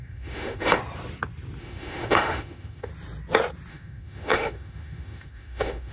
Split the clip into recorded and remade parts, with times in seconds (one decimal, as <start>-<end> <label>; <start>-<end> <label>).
0.0-0.8 remade; 0.8-1.6 recorded; 1.6-2.9 remade; 2.9-3.7 recorded; 3.7-5.9 remade

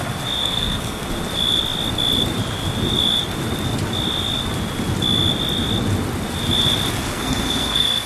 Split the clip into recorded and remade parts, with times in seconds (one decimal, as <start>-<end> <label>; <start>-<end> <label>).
0.0-0.4 recorded; 0.4-1.1 remade; 1.1-7.0 recorded; 7.0-8.1 remade